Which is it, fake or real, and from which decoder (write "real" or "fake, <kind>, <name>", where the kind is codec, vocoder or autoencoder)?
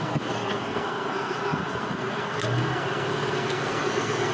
fake, codec, SNAC